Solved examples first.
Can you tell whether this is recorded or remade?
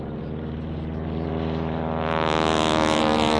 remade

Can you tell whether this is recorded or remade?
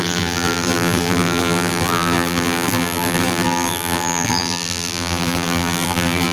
remade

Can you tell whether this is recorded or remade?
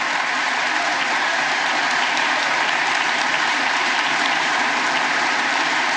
remade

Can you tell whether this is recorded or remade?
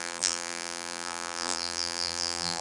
remade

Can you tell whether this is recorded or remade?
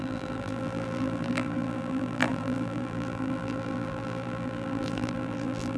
remade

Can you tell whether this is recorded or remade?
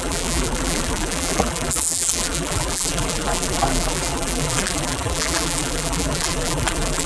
remade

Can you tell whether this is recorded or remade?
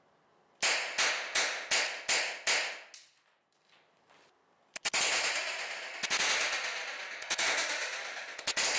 recorded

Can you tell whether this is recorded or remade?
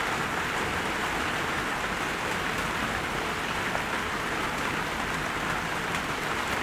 recorded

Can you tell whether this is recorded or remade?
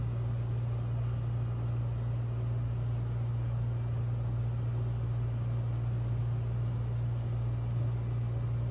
recorded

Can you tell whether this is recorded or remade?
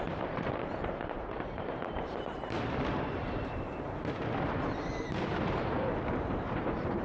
remade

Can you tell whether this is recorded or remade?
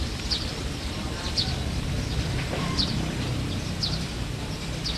remade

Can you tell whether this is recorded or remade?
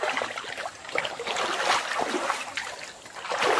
recorded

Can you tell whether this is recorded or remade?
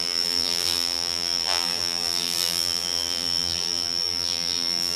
remade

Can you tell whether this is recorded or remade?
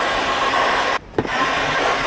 recorded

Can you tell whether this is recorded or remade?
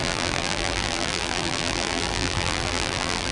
remade